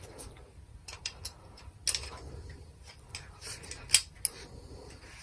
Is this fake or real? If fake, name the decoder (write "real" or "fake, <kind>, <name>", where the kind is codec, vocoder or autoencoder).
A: real